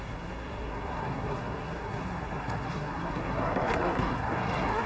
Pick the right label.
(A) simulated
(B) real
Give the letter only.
A